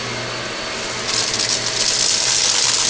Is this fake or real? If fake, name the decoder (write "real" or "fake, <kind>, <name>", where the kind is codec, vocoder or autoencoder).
real